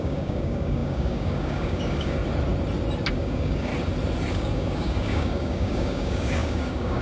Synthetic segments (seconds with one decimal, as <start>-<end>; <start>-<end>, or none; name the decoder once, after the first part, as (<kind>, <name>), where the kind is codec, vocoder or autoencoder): 0.0-2.2 (codec, DAC); 3.1-3.7; 4.3-7.0

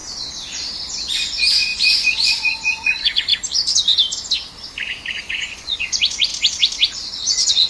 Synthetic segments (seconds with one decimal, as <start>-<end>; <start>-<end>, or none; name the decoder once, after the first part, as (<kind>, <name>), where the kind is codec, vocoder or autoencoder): 1.1-3.3 (vocoder, Vocos); 5.2-6.3; 7.1-7.7

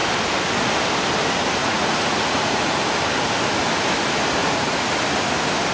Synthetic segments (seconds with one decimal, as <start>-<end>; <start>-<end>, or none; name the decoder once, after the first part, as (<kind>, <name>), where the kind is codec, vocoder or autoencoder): 1.6-2.8 (vocoder, Vocos); 4.4-4.9

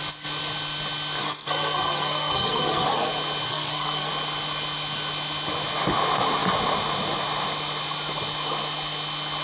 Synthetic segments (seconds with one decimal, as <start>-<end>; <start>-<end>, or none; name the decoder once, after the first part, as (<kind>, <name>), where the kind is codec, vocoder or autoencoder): 1.2-3.1 (codec, SNAC); 3.5-4.1

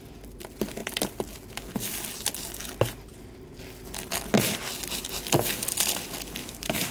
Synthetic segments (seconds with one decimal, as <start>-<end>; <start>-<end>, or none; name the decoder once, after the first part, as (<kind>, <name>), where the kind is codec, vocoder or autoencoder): 6.4-6.9 (autoencoder, DAC-VAE)